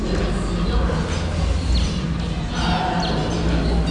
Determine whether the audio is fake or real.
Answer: real